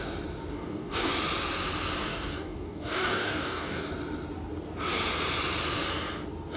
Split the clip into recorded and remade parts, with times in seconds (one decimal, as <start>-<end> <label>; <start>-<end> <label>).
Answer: 0.0-0.5 recorded; 0.5-1.1 remade; 1.1-2.1 recorded; 2.1-3.9 remade; 3.9-6.6 recorded